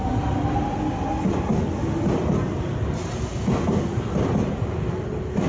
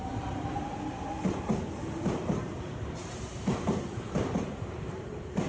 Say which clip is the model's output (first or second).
second